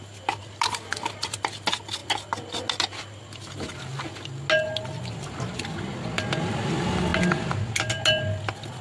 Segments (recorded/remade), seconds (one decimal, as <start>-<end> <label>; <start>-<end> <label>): 0.0-8.8 recorded